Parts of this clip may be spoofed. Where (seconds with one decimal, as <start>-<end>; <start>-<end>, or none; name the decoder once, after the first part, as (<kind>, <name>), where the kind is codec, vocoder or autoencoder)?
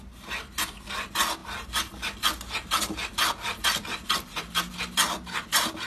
none